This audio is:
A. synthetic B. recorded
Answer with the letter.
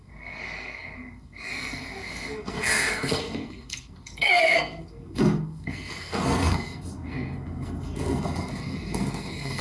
A